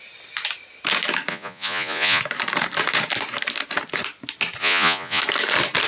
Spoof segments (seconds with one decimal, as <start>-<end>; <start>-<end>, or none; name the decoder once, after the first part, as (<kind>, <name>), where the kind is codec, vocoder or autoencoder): 1.3-2.2 (vocoder, Vocos); 4.6-5.2